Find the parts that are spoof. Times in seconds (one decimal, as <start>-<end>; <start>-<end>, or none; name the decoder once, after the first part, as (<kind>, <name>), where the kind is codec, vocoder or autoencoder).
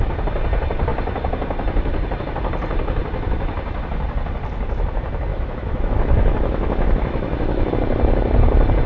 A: 5.3-7.7 (autoencoder, DAC-VAE)